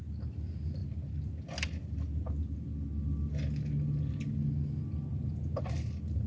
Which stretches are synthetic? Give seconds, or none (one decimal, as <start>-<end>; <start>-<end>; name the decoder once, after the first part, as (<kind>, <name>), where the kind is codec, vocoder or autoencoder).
5.1-5.6 (vocoder, Vocos)